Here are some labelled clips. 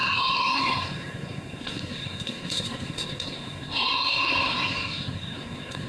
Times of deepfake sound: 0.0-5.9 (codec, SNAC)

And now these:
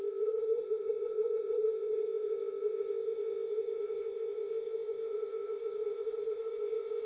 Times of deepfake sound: 0.0-7.0 (codec, ZipCodec)

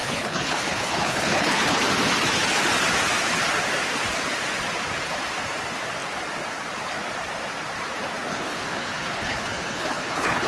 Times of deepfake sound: 0.0-1.8 (codec, HILCodec); 8.3-10.5

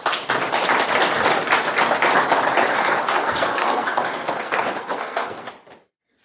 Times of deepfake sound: 2.7-5.5 (codec, SNAC)

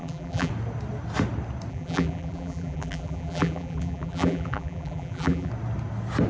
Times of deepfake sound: 0.0-0.5 (vocoder, BigVGAN v2); 1.7-5.5